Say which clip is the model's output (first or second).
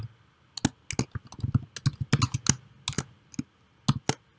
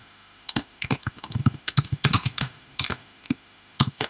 second